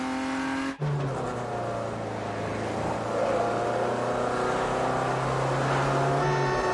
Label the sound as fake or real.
real